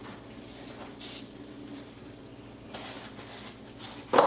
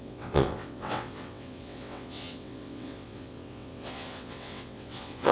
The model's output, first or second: second